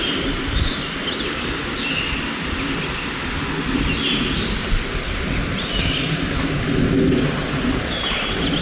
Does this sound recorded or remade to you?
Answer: recorded